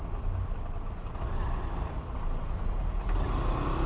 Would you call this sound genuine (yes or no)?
yes